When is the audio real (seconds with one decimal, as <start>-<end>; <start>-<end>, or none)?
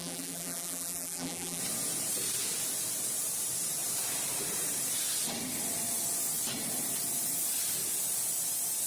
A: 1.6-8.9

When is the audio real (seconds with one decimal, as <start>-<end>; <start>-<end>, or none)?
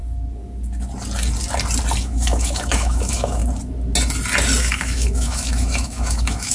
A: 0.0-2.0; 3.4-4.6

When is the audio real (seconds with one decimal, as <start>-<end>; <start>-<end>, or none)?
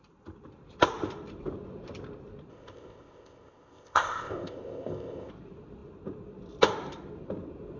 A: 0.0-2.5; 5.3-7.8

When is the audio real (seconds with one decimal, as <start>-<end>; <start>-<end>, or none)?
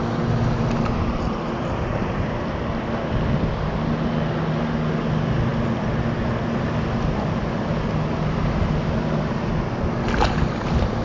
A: 0.0-11.0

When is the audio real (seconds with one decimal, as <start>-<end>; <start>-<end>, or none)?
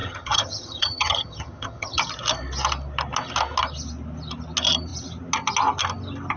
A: 2.0-6.4